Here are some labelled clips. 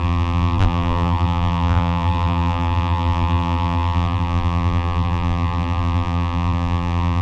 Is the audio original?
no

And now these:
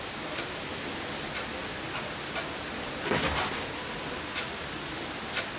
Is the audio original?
no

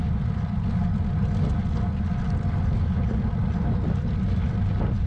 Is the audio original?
yes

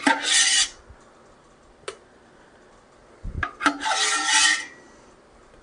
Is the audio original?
yes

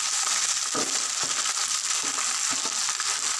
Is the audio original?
yes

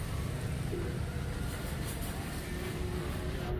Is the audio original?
no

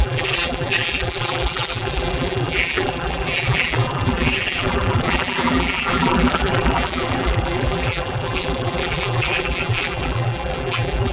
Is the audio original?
no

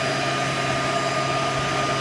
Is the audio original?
yes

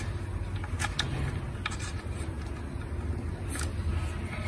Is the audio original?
yes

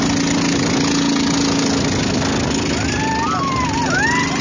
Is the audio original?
yes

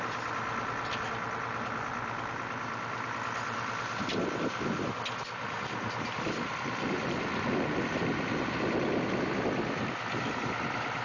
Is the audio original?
yes